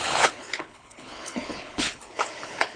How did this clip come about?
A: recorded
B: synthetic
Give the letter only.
B